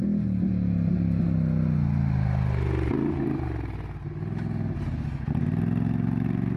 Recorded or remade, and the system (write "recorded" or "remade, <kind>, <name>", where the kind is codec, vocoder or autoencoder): recorded